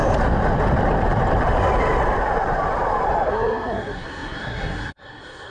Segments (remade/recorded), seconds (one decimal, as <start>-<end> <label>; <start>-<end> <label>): 0.0-3.3 recorded; 3.3-5.5 remade